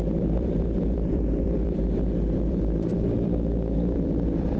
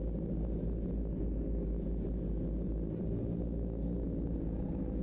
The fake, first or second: first